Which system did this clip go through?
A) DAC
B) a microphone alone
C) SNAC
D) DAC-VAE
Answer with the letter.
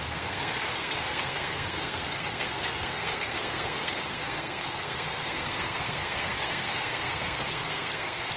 C